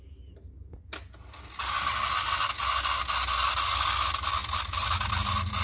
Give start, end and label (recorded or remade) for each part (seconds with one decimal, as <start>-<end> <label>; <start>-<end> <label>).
0.0-5.6 recorded